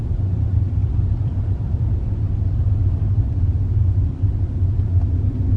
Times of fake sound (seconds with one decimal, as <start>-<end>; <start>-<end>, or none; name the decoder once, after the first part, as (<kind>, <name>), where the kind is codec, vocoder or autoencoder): 0.8-4.2 (vocoder, BigVGAN v2)